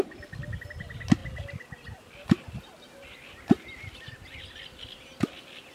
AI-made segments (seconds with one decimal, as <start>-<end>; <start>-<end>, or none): none